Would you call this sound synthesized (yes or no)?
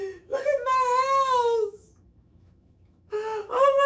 yes